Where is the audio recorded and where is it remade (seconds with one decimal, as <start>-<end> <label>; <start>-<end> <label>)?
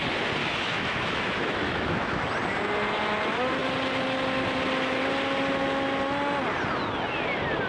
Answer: 0.0-0.4 recorded; 0.4-2.3 remade; 2.3-7.7 recorded